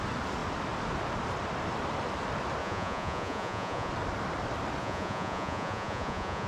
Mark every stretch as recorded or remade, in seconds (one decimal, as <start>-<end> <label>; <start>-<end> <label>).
0.0-2.6 recorded; 2.6-3.9 remade; 3.9-4.8 recorded; 4.8-6.5 remade